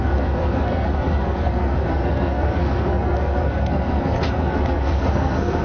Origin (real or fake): fake